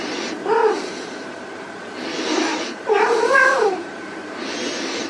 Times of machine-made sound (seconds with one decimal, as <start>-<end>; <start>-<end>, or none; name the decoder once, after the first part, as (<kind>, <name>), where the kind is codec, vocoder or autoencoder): 0.6-1.8 (vocoder, BigVGAN v2); 2.5-4.4